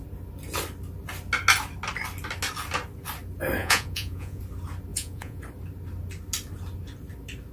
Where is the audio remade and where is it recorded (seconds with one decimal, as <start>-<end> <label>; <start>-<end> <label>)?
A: 0.0-3.6 recorded; 3.6-4.4 remade; 4.4-4.9 recorded; 4.9-5.4 remade; 5.4-7.5 recorded